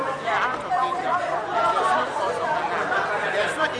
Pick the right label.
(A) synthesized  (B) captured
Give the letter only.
B